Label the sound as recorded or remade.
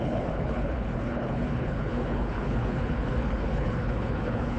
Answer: remade